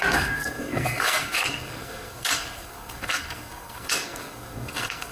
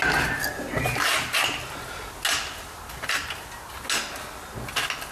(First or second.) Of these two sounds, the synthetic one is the first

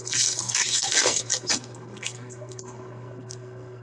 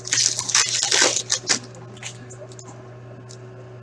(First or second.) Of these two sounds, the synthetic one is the first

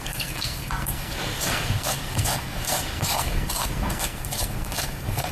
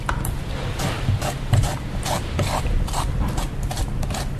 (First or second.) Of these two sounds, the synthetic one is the first